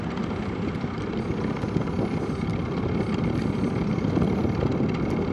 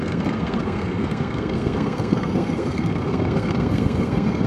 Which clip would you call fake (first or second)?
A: second